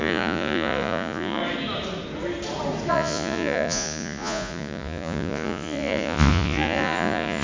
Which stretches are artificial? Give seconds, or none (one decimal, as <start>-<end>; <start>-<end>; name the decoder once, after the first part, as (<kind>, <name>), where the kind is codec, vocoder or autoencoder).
0.0-1.4 (vocoder, Vocos); 2.9-7.4